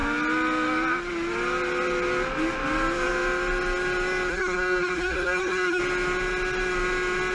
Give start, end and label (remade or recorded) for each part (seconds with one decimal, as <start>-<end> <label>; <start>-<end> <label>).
0.0-4.3 recorded; 4.3-5.8 remade; 5.8-7.3 recorded